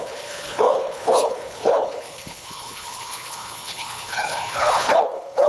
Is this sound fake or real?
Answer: fake